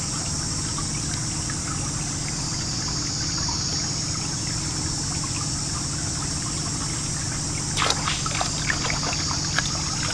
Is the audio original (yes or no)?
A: yes